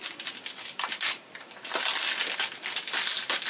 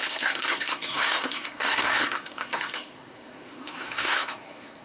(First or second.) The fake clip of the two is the second